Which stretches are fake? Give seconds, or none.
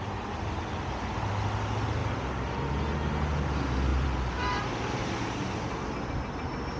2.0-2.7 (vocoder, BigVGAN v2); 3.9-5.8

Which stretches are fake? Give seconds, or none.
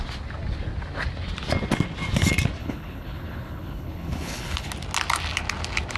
2.6-4.7 (codec, HILCodec)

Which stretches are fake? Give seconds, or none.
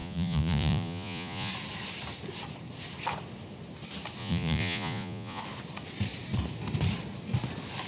0.0-1.5 (vocoder, Vocos); 4.2-5.4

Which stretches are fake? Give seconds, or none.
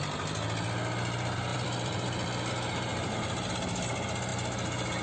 1.5-2.5 (vocoder, BigVGAN v2); 2.9-3.5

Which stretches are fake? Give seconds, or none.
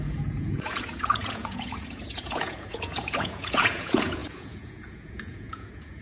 0.0-6.0 (vocoder, Vocos)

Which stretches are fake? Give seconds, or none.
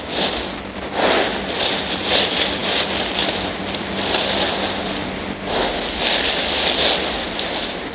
none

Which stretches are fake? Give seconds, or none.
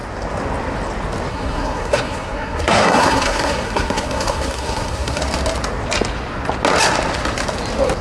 1.3-5.2 (codec, SNAC)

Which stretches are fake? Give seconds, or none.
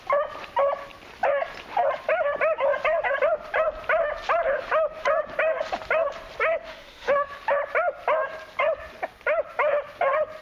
6.6-7.3 (autoencoder, DAC-VAE)